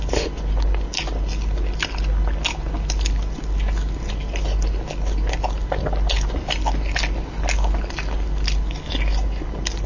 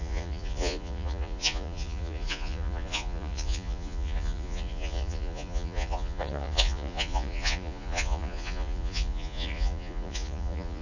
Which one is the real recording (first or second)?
first